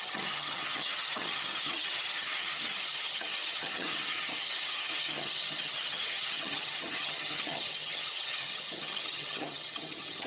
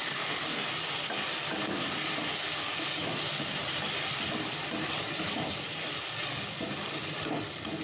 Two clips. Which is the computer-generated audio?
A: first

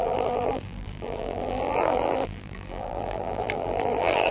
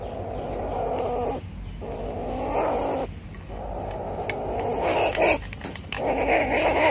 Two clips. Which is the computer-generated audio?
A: first